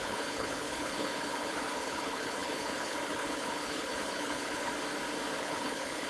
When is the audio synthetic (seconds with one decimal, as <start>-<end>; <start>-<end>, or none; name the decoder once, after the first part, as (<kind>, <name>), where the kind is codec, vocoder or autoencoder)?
0.0-4.7 (codec, HILCodec); 5.4-6.1